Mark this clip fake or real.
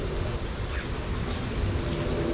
real